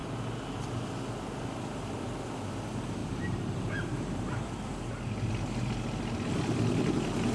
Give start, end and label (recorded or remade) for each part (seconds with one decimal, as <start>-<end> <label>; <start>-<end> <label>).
0.0-3.0 recorded; 3.0-6.3 remade; 6.3-7.3 recorded

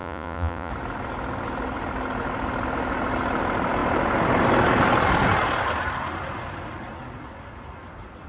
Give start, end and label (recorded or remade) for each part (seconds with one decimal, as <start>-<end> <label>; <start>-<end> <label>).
0.0-0.7 remade; 0.7-8.3 recorded

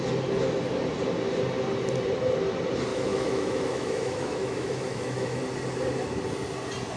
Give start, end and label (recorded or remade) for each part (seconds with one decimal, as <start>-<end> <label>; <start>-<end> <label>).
0.0-2.9 recorded; 2.9-5.4 remade; 5.4-7.0 recorded

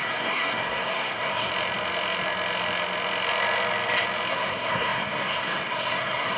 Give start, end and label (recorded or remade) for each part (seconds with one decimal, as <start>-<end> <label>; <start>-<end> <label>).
0.0-1.5 remade; 1.5-4.3 recorded; 4.3-6.4 remade